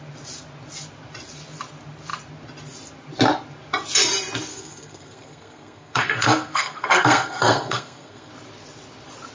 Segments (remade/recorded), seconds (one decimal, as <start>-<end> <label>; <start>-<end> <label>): 0.0-4.5 recorded; 4.5-8.3 remade; 8.3-9.3 recorded